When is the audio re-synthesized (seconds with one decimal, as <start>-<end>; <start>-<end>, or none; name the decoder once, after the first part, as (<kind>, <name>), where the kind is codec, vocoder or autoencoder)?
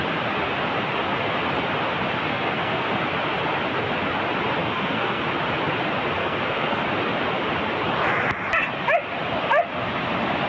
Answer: 2.3-2.9 (codec, SNAC); 4.6-5.2; 6.2-6.8